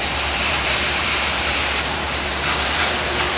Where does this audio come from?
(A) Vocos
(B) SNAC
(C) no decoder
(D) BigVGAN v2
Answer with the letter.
D